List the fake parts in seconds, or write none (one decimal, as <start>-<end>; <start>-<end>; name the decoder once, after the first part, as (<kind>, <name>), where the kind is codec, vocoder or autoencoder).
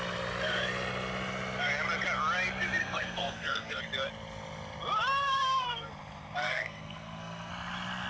2.8-3.8 (codec, SNAC); 5.2-5.9; 6.4-7.5